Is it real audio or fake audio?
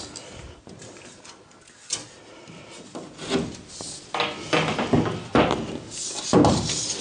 real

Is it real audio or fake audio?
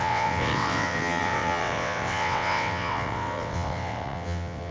fake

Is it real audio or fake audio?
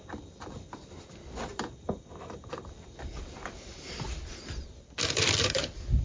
fake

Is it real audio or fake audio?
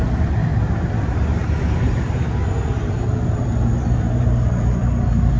fake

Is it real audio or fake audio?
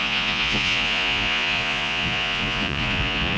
fake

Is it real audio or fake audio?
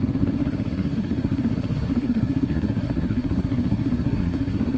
fake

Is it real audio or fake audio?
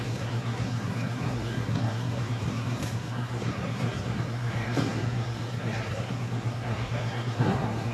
fake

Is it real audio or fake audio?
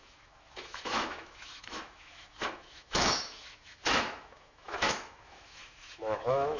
fake